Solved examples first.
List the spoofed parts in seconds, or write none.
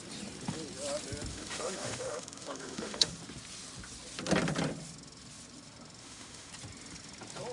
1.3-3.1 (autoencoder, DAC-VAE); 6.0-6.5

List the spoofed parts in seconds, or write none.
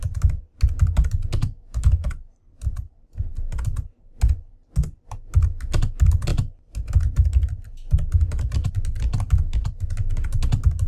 1.4-2.1 (autoencoder, DAC-VAE)